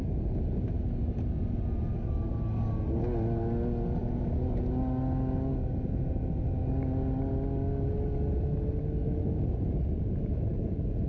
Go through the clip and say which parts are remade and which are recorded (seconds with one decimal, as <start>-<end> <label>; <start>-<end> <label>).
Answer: 0.0-1.9 recorded; 1.9-2.7 remade; 2.7-11.1 recorded

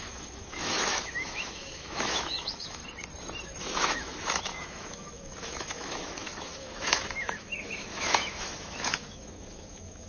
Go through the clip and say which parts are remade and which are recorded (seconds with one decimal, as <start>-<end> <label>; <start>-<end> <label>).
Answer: 0.0-2.8 remade; 2.8-3.6 recorded; 3.6-10.1 remade

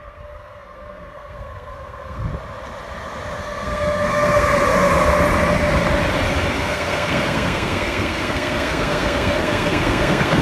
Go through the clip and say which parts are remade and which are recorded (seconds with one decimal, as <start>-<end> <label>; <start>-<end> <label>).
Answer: 0.0-2.3 remade; 2.3-3.4 recorded; 3.4-4.6 remade; 4.6-6.6 recorded; 6.6-10.4 remade

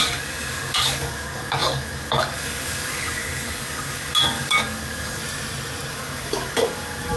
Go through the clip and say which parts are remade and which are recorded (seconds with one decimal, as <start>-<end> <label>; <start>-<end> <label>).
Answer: 0.0-5.2 remade; 5.2-5.9 recorded; 5.9-7.2 remade

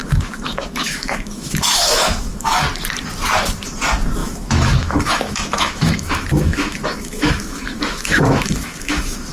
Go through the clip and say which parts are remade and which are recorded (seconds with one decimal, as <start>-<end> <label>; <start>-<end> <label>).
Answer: 0.0-2.6 remade; 2.6-4.2 recorded; 4.2-9.3 remade